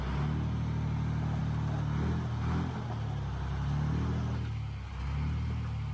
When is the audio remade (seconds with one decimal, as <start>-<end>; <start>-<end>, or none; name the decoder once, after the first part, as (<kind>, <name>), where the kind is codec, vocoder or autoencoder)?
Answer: none